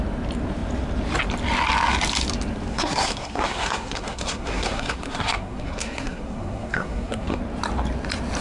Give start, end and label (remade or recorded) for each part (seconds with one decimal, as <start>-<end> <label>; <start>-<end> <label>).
0.0-2.7 recorded; 2.7-7.4 remade; 7.4-8.4 recorded